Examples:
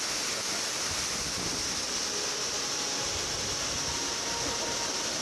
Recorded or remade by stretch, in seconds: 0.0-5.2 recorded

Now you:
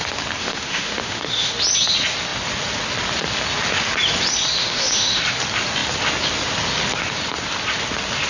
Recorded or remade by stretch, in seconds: 0.0-0.4 recorded; 0.4-1.5 remade; 1.5-4.6 recorded; 4.6-5.2 remade; 5.2-8.3 recorded

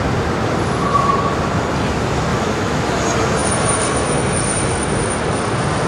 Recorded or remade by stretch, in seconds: 0.0-2.3 recorded; 2.3-3.0 remade; 3.0-5.9 recorded

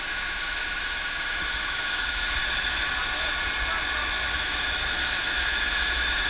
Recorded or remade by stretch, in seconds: 0.0-2.4 remade; 2.4-4.4 recorded; 4.4-6.3 remade

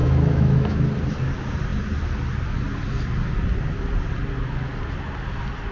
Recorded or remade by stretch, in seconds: 0.0-0.8 remade; 0.8-5.7 recorded

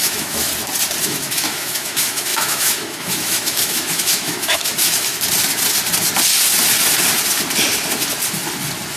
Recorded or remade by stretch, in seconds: 0.0-0.5 remade; 0.5-1.0 recorded; 1.0-5.1 remade; 5.1-9.0 recorded

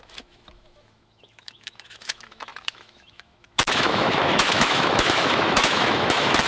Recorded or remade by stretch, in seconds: 0.0-6.5 remade

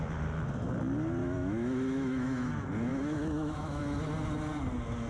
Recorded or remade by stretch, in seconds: 0.0-1.2 recorded; 1.2-2.5 remade; 2.5-2.9 recorded; 2.9-3.8 remade; 3.8-5.1 recorded